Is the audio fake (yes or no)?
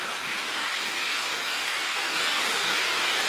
yes